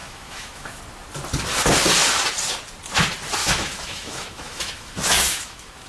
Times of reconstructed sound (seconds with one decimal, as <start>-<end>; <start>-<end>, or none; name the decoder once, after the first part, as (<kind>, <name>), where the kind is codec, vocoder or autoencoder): 0.0-0.8 (autoencoder, DAC-VAE); 3.4-5.9